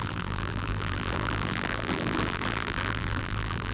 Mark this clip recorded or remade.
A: remade